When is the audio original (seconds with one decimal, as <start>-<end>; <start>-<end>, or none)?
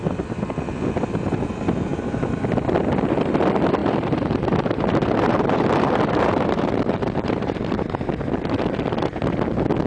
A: 0.0-3.8; 8.3-9.9